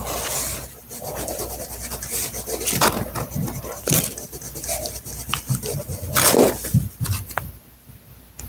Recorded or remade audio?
recorded